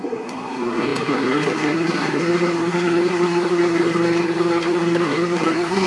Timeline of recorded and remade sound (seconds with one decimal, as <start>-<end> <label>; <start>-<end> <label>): 0.0-5.9 remade